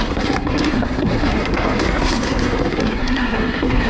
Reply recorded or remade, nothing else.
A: remade